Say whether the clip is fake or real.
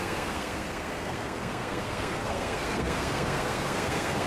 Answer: fake